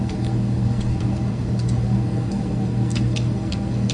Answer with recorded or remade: remade